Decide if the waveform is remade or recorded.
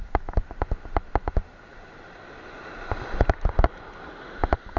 recorded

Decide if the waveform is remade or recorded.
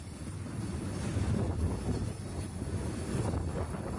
recorded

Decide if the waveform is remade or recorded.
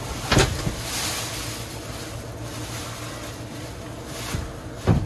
recorded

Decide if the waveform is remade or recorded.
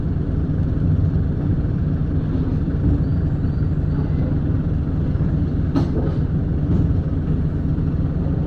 recorded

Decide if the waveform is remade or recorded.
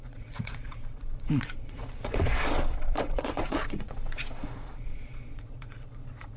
remade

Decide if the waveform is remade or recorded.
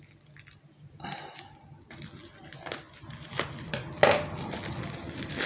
recorded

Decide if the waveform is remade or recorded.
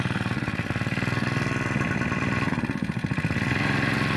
recorded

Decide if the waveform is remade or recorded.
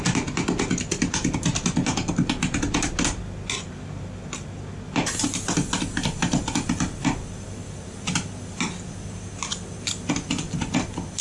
recorded